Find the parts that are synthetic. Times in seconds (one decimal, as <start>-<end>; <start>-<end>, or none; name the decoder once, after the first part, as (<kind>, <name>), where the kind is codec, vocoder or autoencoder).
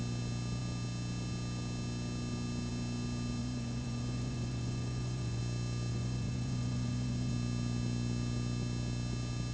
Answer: 3.4-5.4 (vocoder, Vocos); 5.9-7.3